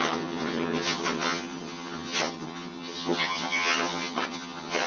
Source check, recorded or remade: remade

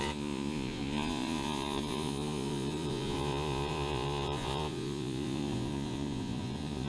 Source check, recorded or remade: remade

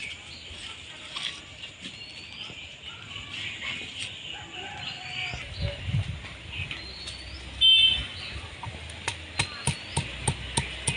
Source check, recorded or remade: recorded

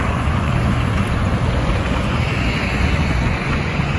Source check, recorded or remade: remade